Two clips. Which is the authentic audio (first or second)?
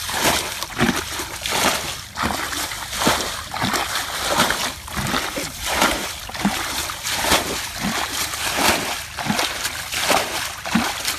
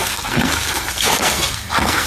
first